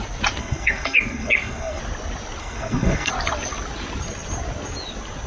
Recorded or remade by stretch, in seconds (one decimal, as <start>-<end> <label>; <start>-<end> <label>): 0.0-0.4 recorded; 0.4-1.8 remade; 1.8-2.4 recorded; 2.4-3.1 remade; 3.1-5.3 recorded

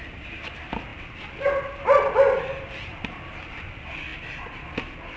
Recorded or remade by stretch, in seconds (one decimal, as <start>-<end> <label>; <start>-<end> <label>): 0.0-0.9 recorded; 0.9-3.5 remade; 3.5-4.1 recorded; 4.1-5.2 remade